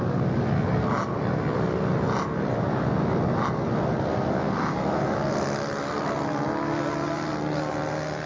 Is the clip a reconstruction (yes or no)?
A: no